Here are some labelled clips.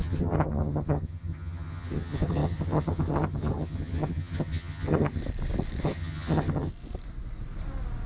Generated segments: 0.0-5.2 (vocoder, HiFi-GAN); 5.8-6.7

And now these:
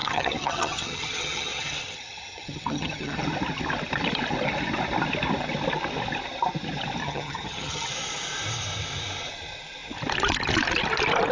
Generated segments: 0.0-3.2 (vocoder, HiFi-GAN); 7.0-7.9

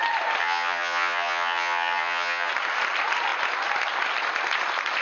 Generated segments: 0.4-2.5 (vocoder, HiFi-GAN)

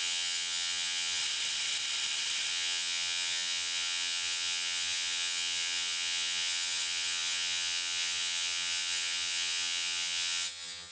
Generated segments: 0.0-1.2 (vocoder, HiFi-GAN); 2.5-10.9

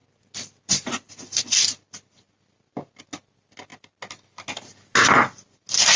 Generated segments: none

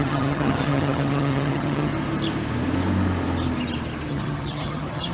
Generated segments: 0.0-1.9 (vocoder, HiFi-GAN); 4.1-5.1